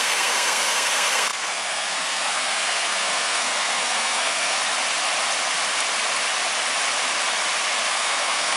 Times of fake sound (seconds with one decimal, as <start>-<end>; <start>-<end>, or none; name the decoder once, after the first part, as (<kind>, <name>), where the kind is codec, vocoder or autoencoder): 0.0-4.6 (codec, SNAC); 7.9-8.6